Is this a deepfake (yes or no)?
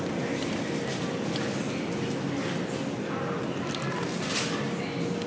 no